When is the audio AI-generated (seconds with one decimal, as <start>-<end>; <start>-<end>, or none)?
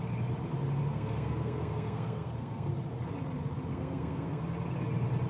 0.9-2.7; 3.7-4.4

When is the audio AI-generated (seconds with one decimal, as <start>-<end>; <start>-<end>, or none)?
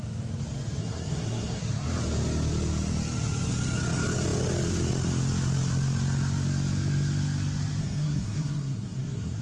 0.8-1.6; 7.8-9.4